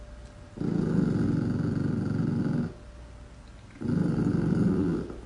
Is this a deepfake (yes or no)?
no